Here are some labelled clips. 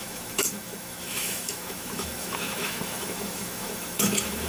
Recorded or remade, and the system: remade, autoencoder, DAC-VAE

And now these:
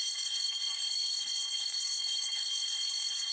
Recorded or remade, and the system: remade, codec, SNAC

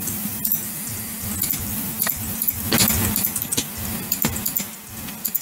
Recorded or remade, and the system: recorded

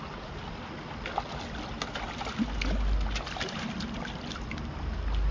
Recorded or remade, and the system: recorded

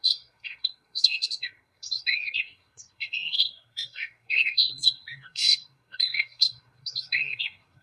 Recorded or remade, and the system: remade, codec, SNAC